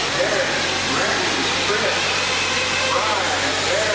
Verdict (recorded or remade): recorded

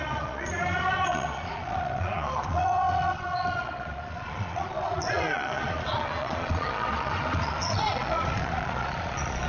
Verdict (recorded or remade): remade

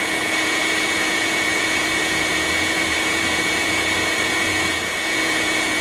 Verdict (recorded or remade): remade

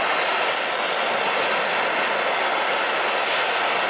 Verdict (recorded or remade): recorded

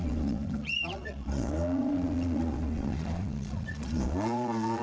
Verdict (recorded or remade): remade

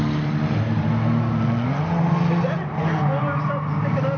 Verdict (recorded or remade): recorded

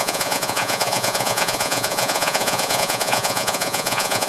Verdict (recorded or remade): remade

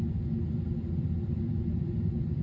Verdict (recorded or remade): recorded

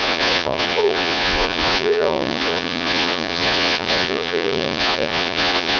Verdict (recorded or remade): remade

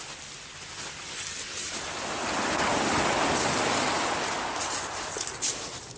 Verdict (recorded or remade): recorded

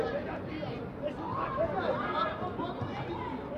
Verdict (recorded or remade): recorded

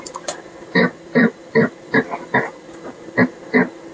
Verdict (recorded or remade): recorded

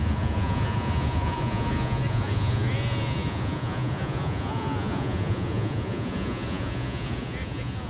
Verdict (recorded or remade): remade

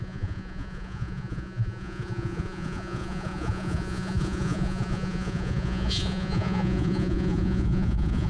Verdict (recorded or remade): remade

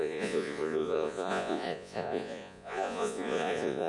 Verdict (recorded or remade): remade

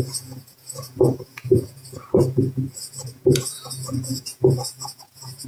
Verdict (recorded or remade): remade